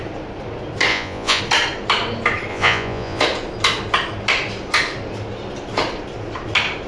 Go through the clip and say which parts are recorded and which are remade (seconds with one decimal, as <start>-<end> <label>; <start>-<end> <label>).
0.0-0.9 recorded; 0.9-1.4 remade; 1.4-2.5 recorded; 2.5-3.2 remade; 3.2-6.9 recorded